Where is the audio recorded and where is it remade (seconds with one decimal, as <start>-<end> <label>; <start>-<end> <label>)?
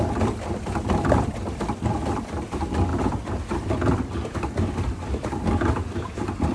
0.0-6.5 remade